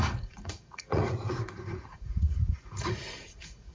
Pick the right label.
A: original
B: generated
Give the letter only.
B